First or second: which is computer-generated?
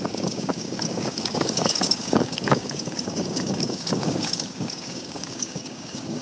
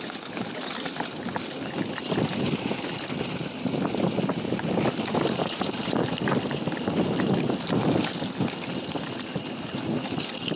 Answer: first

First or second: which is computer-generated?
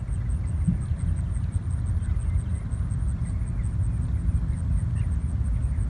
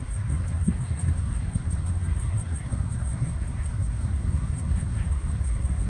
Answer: second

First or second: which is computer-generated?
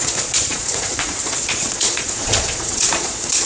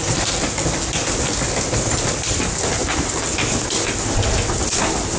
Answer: first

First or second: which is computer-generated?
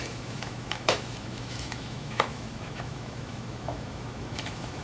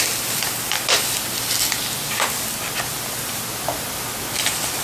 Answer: first